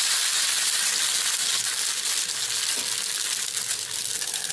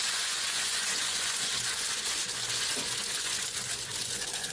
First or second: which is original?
first